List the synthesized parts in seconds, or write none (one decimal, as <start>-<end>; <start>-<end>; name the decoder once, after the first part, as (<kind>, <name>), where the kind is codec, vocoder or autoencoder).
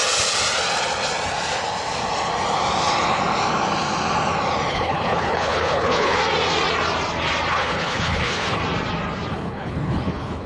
4.7-6.2 (codec, HILCodec); 7.5-8.6; 9.3-10.5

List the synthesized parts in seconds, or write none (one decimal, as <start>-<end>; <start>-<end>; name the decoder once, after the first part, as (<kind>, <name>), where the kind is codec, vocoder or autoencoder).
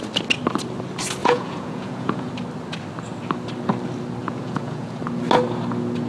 1.2-2.3 (vocoder, Vocos); 4.2-5.0